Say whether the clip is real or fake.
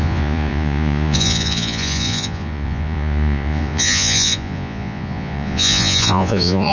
fake